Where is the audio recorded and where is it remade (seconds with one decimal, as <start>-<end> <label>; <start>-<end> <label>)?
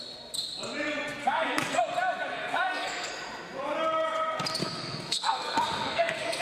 0.0-1.2 recorded; 1.2-1.8 remade; 1.8-2.3 recorded; 2.3-3.1 remade; 3.1-4.6 recorded; 4.6-6.4 remade